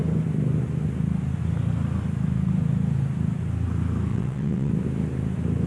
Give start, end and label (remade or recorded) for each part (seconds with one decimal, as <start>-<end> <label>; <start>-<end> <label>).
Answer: 0.0-4.1 recorded; 4.1-4.7 remade; 4.7-5.7 recorded